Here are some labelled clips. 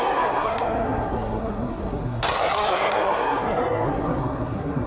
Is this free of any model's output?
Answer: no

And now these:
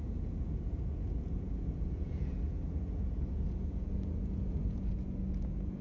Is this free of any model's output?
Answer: no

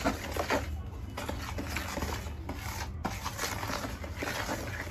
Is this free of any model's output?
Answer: yes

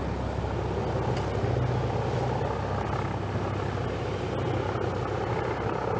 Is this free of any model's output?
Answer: yes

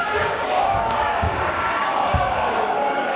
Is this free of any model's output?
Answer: no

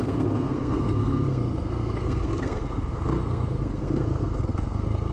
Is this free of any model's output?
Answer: no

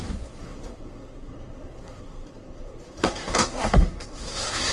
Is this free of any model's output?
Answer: no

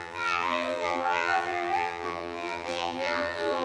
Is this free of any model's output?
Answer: no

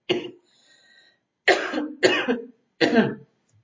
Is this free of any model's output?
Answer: yes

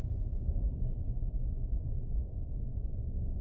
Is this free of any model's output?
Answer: no